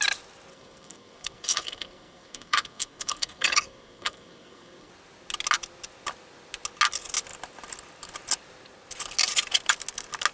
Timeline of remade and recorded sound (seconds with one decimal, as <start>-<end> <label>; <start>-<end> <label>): 0.0-0.5 recorded; 0.5-4.9 remade; 4.9-10.3 recorded